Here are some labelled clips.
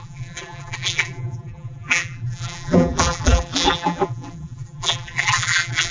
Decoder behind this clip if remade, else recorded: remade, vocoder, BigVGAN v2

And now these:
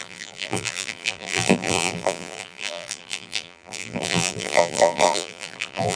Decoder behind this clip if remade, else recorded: remade, vocoder, BigVGAN v2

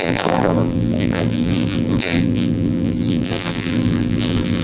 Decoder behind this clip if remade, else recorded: remade, vocoder, BigVGAN v2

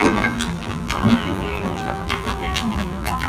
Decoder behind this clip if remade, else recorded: remade, vocoder, BigVGAN v2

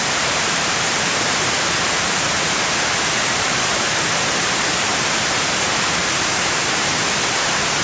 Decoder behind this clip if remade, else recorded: remade, vocoder, BigVGAN v2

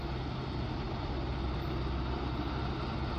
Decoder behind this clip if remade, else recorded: recorded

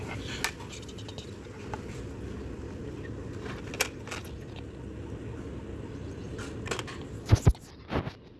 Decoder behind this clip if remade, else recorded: recorded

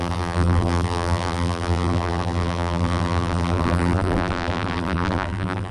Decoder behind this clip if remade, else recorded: remade, vocoder, BigVGAN v2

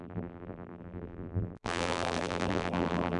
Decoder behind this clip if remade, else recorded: remade, vocoder, BigVGAN v2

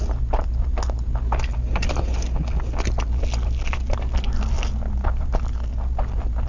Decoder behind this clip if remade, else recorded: recorded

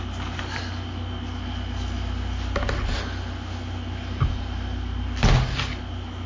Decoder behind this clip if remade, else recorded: recorded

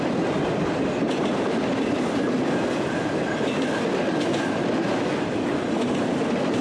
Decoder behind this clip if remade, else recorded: remade, vocoder, BigVGAN v2